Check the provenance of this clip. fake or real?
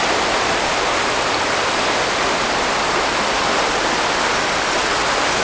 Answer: real